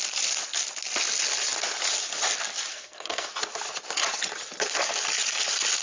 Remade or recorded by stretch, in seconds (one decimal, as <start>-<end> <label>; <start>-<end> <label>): 0.0-2.7 recorded; 2.7-3.3 remade; 3.3-5.8 recorded